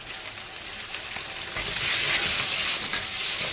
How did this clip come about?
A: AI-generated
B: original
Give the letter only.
B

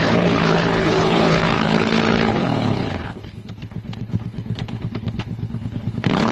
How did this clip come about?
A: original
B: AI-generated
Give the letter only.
B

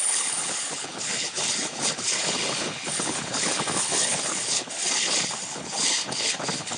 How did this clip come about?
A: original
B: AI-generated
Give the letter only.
B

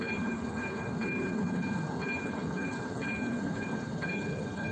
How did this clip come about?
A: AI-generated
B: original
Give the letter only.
A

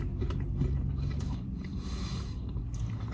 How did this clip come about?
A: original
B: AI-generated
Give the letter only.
A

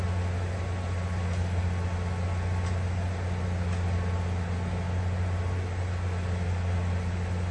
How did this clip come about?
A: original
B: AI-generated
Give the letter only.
A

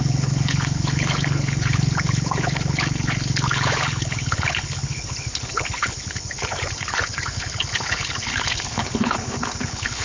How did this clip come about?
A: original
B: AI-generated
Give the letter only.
B